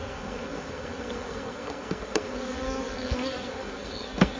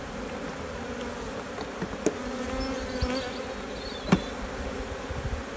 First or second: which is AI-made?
first